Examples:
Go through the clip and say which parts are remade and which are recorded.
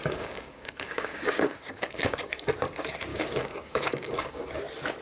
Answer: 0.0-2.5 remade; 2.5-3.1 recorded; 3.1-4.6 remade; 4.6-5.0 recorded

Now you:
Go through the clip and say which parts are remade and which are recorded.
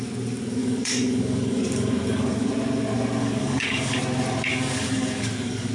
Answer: 0.0-0.6 recorded; 0.6-2.5 remade; 2.5-3.2 recorded; 3.2-4.0 remade; 4.0-4.5 recorded; 4.5-5.7 remade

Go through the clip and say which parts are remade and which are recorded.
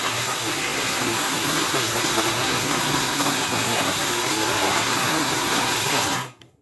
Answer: 0.0-6.6 remade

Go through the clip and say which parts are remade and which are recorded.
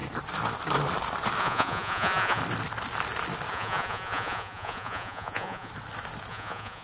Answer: 0.0-1.4 recorded; 1.4-2.4 remade; 2.4-3.5 recorded; 3.5-5.7 remade; 5.7-6.3 recorded; 6.3-6.8 remade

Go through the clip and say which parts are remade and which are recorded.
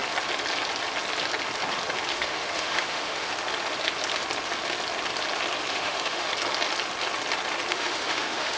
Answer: 0.0-2.1 recorded; 2.1-3.3 remade; 3.3-5.7 recorded; 5.7-6.3 remade; 6.3-7.7 recorded; 7.7-8.6 remade